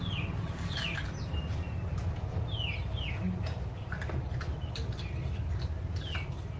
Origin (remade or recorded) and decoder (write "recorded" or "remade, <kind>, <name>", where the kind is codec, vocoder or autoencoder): recorded